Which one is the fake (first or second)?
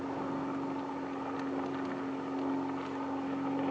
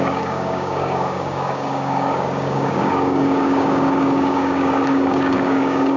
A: second